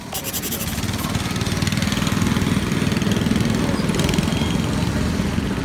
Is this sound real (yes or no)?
yes